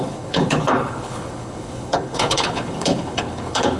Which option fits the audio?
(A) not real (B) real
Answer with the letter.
A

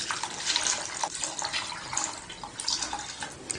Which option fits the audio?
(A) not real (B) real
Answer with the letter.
B